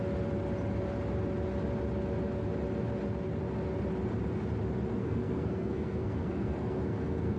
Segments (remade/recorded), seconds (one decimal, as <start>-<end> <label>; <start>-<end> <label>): 0.0-5.0 recorded; 5.0-7.4 remade